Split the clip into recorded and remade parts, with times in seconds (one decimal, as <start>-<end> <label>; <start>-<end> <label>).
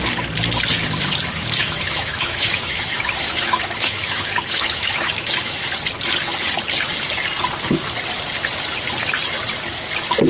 0.0-1.3 recorded; 1.3-5.6 remade; 5.6-10.3 recorded